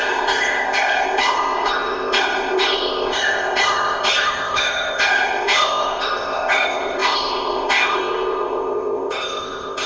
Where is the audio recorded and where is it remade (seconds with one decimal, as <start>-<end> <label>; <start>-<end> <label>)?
0.0-9.9 remade